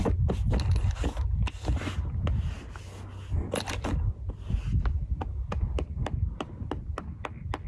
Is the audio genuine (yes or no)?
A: yes